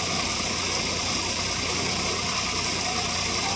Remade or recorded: recorded